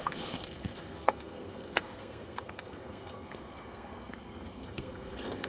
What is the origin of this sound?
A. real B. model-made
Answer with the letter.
B